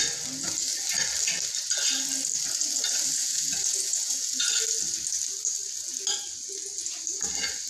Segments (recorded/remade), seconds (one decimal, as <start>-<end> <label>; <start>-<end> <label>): 0.0-3.2 recorded; 3.2-4.5 remade; 4.5-7.7 recorded